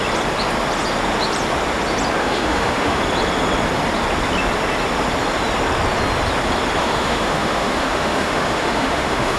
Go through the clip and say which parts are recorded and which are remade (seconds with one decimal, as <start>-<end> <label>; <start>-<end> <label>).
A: 0.0-2.2 recorded; 2.2-3.0 remade; 3.0-6.8 recorded; 6.8-9.4 remade